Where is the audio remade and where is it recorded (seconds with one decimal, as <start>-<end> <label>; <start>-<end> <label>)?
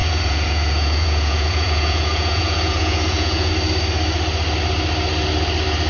0.0-3.5 remade; 3.5-5.9 recorded